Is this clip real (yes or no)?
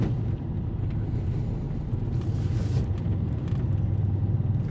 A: yes